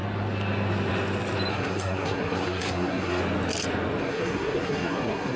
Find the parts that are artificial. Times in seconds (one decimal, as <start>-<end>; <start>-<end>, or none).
1.5-3.2; 4.0-5.4